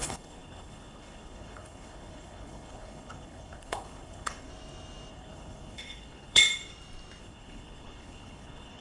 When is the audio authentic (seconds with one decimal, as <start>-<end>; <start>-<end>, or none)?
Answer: 4.5-5.1; 6.4-7.2

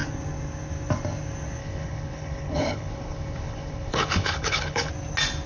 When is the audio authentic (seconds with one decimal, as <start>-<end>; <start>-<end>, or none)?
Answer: 0.0-1.6; 4.9-5.5

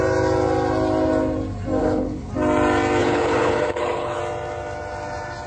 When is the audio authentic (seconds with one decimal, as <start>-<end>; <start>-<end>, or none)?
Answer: 0.0-1.8; 2.3-3.0; 4.2-5.5

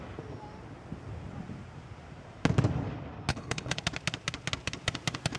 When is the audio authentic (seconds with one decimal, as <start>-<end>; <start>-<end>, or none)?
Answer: 0.0-3.3; 3.8-5.4